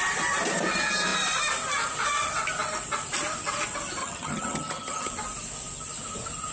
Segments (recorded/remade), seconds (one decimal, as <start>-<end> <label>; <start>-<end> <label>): 0.0-4.0 recorded; 4.0-5.1 remade; 5.1-6.5 recorded